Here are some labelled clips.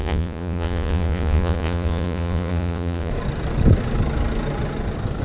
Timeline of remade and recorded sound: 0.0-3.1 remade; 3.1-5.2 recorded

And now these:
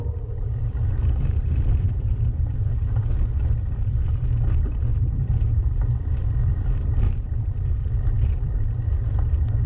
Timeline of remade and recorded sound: 0.0-9.7 recorded

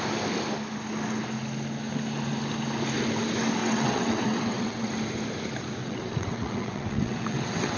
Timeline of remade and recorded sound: 0.0-3.6 recorded; 3.6-4.9 remade; 4.9-5.8 recorded; 5.8-7.8 remade

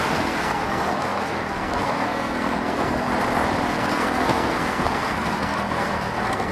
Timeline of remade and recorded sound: 0.0-3.1 remade; 3.1-3.7 recorded; 3.7-6.5 remade